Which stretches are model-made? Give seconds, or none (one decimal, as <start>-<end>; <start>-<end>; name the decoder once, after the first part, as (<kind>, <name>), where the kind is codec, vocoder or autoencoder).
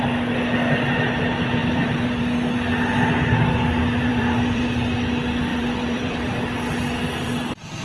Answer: 1.6-2.2 (vocoder, BigVGAN v2); 4.1-4.6; 5.5-6.4